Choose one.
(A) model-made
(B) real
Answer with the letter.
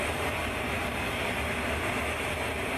B